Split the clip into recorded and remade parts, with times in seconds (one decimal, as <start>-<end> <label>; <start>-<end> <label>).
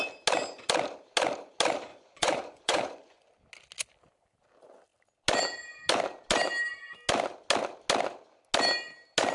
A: 0.0-1.9 recorded; 1.9-3.3 remade; 3.3-9.3 recorded